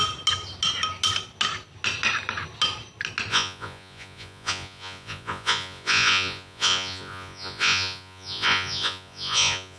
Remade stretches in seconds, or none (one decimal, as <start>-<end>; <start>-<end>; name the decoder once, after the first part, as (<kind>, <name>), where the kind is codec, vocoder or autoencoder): 3.3-9.8 (vocoder, Vocos)